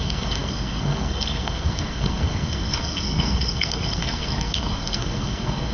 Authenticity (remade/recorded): remade